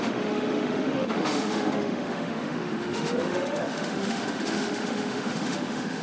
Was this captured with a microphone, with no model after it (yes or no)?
no